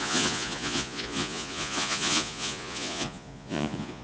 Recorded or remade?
remade